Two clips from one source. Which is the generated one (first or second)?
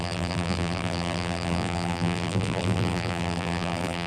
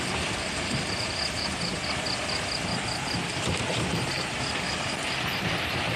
first